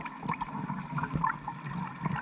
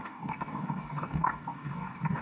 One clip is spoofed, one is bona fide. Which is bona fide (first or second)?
first